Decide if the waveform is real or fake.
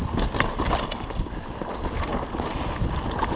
real